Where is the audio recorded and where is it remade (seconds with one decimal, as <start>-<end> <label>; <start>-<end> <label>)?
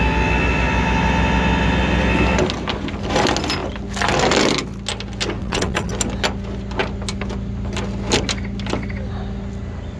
0.0-5.4 recorded; 5.4-5.9 remade; 5.9-10.0 recorded